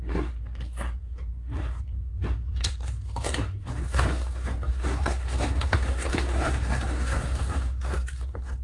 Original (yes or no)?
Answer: no